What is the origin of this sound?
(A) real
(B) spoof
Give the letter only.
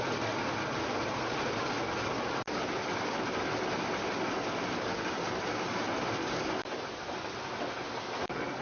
A